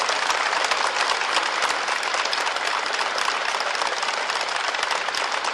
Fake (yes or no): no